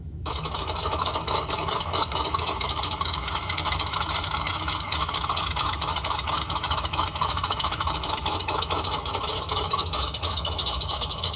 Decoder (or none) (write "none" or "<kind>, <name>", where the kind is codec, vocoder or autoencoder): autoencoder, DAC-VAE